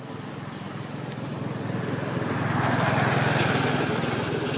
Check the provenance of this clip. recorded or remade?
recorded